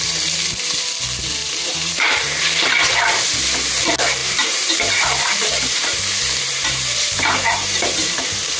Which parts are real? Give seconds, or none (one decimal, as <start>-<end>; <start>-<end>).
0.0-1.4; 2.4-4.2